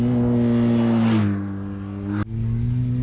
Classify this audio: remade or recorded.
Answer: recorded